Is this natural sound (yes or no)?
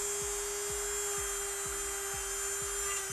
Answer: yes